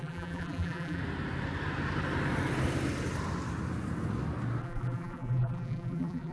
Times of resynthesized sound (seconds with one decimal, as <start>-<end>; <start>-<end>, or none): 0.0-1.0; 4.6-6.3